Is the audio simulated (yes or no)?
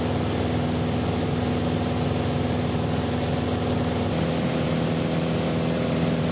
no